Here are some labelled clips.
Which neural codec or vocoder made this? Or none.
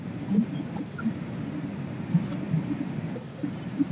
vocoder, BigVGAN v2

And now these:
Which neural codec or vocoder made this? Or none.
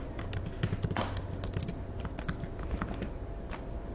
none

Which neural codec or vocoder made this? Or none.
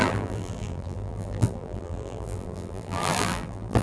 vocoder, BigVGAN v2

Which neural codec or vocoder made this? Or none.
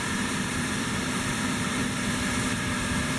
vocoder, BigVGAN v2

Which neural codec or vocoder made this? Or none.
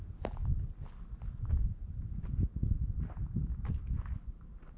vocoder, BigVGAN v2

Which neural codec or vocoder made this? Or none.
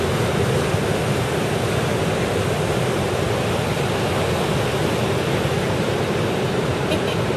none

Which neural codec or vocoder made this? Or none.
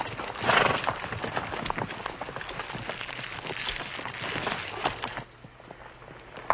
none